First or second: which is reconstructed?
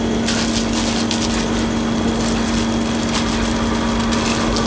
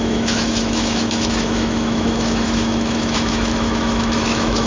second